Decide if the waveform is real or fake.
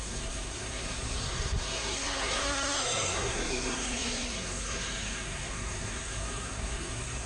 fake